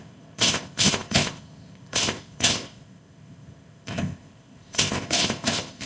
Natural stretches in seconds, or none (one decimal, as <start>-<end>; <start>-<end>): none